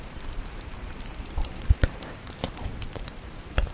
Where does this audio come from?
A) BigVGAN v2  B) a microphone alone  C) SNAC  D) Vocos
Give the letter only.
A